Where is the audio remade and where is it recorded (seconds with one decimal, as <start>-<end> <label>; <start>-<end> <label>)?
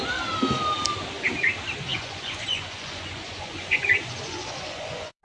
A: 0.0-1.9 recorded; 1.9-5.2 remade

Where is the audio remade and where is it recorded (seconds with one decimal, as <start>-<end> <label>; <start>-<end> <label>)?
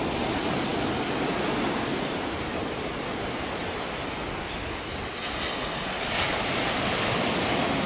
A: 0.0-7.9 recorded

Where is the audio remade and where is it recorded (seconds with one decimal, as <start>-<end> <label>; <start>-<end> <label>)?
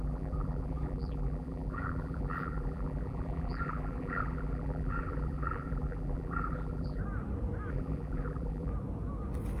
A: 0.0-7.0 remade; 7.0-7.7 recorded; 7.7-8.7 remade; 8.7-9.6 recorded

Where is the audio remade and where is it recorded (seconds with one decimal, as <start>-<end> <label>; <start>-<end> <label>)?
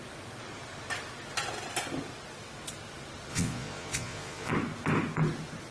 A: 0.0-3.3 recorded; 3.3-4.5 remade; 4.5-5.7 recorded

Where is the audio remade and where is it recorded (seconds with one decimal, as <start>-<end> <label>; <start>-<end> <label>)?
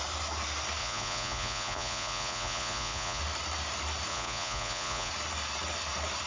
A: 0.0-0.8 recorded; 0.8-3.2 remade; 3.2-4.1 recorded; 4.1-5.1 remade; 5.1-6.3 recorded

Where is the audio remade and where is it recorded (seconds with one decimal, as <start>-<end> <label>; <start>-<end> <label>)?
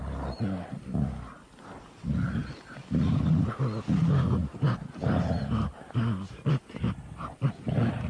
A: 0.0-4.4 recorded; 4.4-6.5 remade; 6.5-8.1 recorded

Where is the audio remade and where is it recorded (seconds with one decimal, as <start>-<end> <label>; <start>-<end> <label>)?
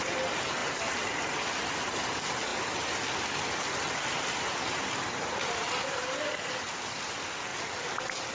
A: 0.0-8.3 recorded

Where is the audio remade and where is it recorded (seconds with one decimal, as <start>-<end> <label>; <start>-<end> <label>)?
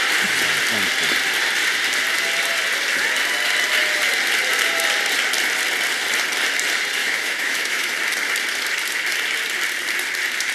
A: 0.0-7.0 recorded; 7.0-7.9 remade; 7.9-10.5 recorded